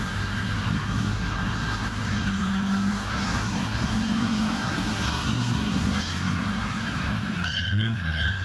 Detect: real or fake fake